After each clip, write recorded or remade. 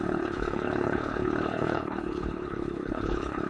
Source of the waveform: remade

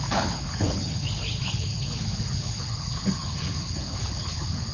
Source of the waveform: remade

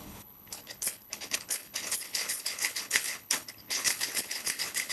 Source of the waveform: remade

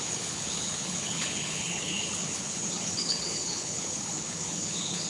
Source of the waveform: remade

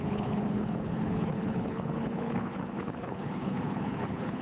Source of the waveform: remade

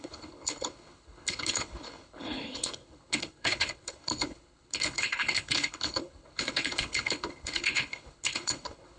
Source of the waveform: remade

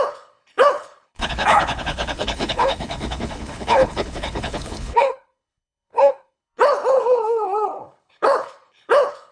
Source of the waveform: remade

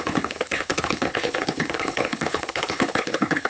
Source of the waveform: remade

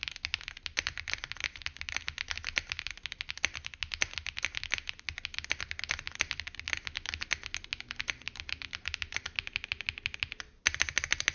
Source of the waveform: recorded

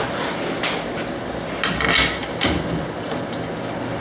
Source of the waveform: recorded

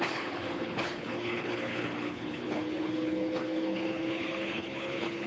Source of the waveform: remade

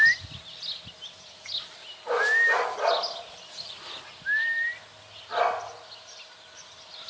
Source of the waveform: recorded